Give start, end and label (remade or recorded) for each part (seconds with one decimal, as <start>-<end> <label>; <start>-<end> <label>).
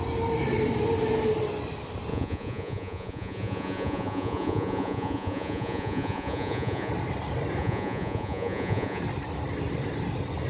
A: 0.0-2.1 recorded; 2.1-6.9 remade; 6.9-7.6 recorded; 7.6-9.0 remade; 9.0-10.5 recorded